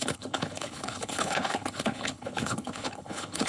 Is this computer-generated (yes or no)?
yes